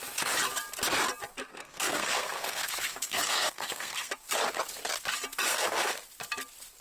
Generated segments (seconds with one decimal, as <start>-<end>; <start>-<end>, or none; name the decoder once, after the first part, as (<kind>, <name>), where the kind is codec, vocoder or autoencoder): 1.3-4.3 (codec, SNAC); 5.5-6.0